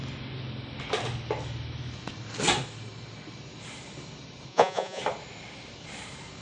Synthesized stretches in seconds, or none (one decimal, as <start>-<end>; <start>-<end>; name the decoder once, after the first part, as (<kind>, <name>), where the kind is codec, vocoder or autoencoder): 4.5-5.0 (vocoder, Vocos)